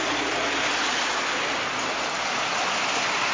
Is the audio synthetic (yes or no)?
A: no